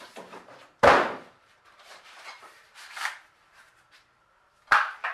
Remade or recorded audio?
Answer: remade